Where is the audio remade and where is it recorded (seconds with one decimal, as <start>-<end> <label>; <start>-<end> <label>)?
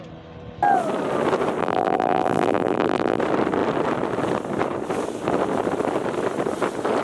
0.0-1.6 recorded; 1.6-3.2 remade; 3.2-7.0 recorded